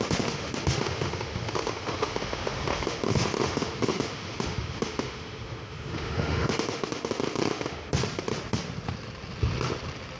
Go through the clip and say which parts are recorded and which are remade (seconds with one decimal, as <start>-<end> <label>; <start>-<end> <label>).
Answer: 0.0-8.0 remade; 8.0-10.2 recorded